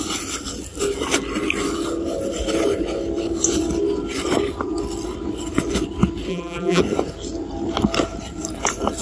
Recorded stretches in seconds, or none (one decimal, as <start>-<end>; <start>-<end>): 0.0-6.3; 6.8-9.0